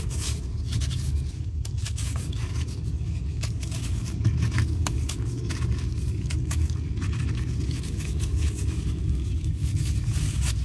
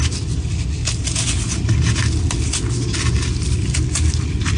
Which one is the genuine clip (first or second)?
second